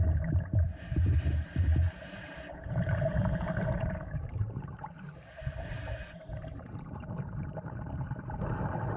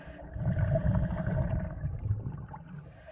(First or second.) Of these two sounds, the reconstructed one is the first